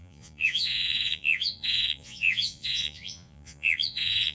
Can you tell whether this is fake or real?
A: fake